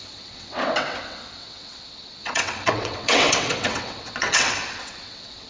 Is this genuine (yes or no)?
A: no